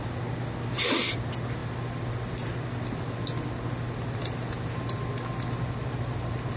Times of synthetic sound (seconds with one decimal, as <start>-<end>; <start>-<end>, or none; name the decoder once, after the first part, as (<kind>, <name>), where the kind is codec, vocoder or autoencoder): none